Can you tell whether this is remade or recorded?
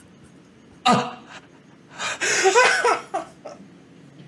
recorded